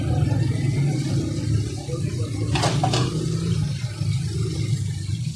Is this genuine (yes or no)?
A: yes